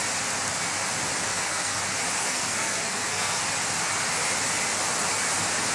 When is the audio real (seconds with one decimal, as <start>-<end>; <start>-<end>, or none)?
0.0-1.3; 1.8-2.2; 3.4-5.7